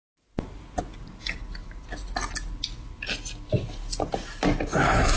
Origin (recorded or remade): recorded